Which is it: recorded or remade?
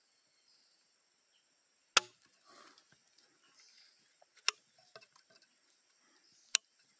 recorded